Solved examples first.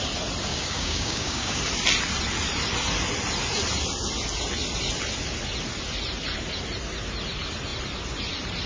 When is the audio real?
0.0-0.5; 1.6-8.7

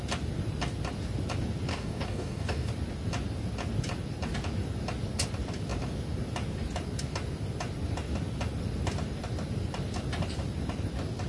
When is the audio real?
0.0-1.7; 2.7-11.3